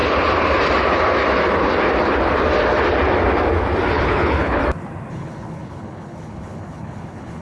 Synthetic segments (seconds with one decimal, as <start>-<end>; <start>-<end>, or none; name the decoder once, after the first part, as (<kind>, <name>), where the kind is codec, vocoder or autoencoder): 3.9-4.6 (codec, HILCodec); 5.1-7.4